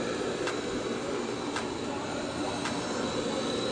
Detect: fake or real real